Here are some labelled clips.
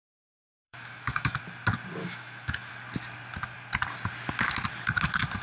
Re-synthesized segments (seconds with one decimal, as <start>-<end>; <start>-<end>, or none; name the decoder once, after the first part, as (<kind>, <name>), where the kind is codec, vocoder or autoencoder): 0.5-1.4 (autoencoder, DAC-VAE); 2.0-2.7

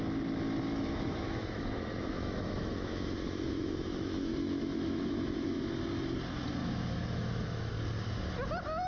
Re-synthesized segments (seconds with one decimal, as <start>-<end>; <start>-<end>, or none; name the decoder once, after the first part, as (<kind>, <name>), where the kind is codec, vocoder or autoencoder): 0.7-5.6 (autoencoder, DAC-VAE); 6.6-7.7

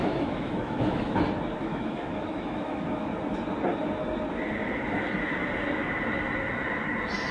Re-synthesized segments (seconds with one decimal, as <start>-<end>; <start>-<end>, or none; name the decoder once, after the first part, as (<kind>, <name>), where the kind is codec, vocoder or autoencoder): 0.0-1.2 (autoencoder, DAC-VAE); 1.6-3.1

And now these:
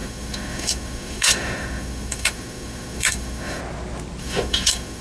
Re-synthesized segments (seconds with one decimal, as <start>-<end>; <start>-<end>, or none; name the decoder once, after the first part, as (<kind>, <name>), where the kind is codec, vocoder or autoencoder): 0.0-3.6 (autoencoder, DAC-VAE); 4.2-5.0